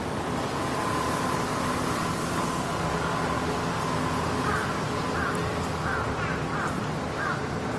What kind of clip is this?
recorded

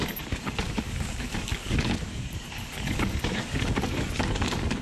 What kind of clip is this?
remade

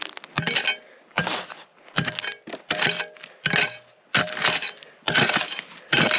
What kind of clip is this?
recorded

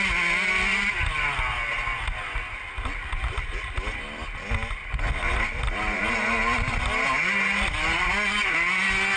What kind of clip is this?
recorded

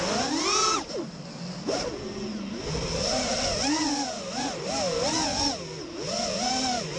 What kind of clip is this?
recorded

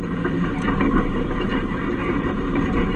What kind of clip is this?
remade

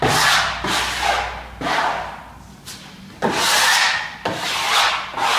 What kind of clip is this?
recorded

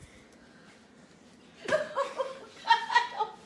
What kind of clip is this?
recorded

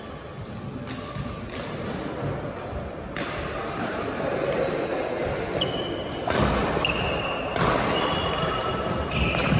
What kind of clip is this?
recorded